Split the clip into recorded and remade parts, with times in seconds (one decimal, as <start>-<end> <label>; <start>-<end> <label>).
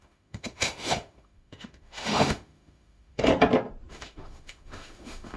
0.0-3.3 remade; 3.3-3.9 recorded; 3.9-5.4 remade